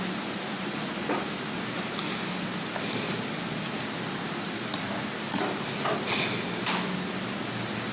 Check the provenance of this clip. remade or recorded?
recorded